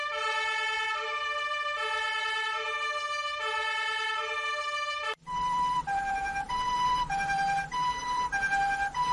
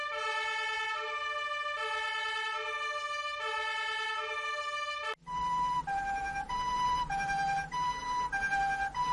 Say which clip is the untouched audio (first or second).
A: second